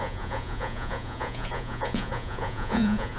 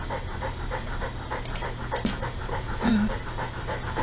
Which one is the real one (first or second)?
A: second